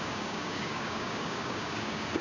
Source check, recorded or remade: remade